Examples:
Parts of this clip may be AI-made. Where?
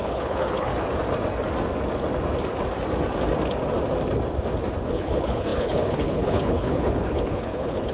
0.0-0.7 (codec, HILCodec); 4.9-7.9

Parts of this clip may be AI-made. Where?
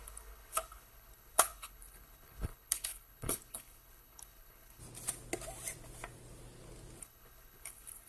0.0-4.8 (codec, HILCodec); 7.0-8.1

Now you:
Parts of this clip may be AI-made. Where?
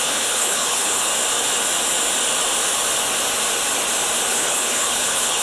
0.0-1.1 (codec, HILCodec); 4.3-5.4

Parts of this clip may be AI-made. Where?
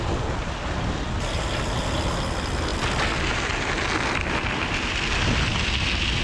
none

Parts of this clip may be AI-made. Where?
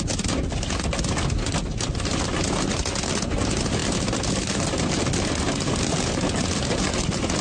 none